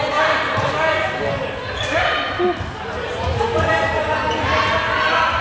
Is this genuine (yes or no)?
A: yes